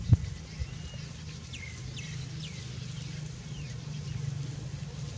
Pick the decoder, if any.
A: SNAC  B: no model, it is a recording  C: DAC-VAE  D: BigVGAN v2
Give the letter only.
B